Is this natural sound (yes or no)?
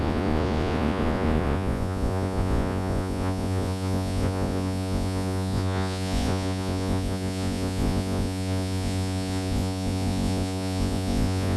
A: no